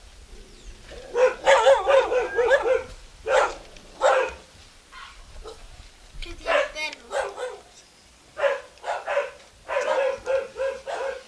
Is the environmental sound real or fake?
real